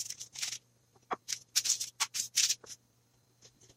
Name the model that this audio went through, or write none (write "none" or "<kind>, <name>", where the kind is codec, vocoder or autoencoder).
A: none